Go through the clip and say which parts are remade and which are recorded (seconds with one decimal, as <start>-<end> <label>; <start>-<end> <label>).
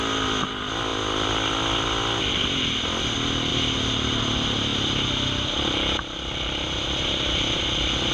0.0-8.1 recorded